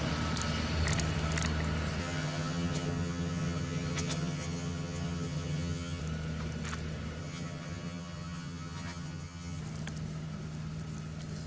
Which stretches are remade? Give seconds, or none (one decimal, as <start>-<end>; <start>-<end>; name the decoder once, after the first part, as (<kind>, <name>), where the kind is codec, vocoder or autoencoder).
2.0-6.0 (vocoder, HiFi-GAN); 7.2-9.6